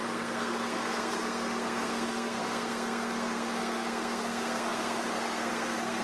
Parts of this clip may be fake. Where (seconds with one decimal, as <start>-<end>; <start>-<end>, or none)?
0.0-6.0